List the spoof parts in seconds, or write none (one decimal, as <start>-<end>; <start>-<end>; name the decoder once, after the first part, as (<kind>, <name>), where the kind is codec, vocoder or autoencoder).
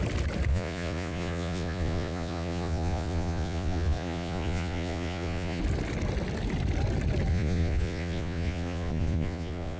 0.5-5.6 (vocoder, Vocos); 7.3-9.8